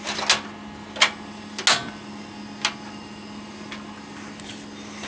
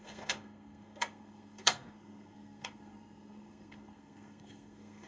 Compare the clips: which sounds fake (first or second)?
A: second